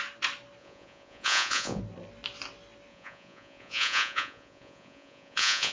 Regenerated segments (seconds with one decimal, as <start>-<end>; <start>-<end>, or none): 0.6-1.8; 2.9-5.7